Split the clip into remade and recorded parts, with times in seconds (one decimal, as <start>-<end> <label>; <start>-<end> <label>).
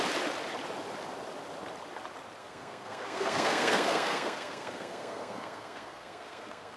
0.0-2.4 recorded; 2.4-6.8 remade